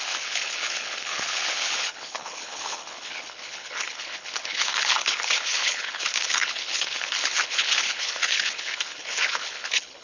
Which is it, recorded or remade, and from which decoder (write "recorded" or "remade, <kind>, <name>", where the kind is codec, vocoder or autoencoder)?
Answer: remade, codec, HILCodec